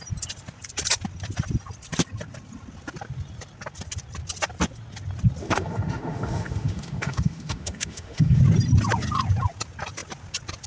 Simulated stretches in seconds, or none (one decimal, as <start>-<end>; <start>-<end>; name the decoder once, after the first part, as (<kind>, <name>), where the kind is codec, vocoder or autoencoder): 5.4-8.4 (autoencoder, DAC-VAE)